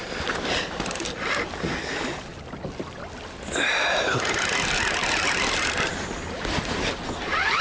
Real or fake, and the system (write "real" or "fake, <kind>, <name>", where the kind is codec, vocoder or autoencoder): real